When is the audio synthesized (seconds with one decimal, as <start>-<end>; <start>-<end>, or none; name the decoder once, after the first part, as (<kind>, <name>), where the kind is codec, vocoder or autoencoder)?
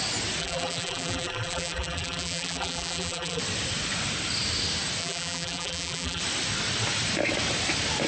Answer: 0.4-3.4 (vocoder, BigVGAN v2); 5.0-6.2